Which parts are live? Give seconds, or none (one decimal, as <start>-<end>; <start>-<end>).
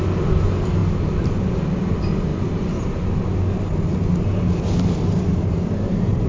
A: 0.0-6.3